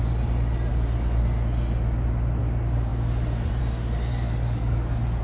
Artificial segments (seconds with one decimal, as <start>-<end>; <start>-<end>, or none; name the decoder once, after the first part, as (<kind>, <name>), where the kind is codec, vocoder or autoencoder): 4.1-5.2 (codec, DAC)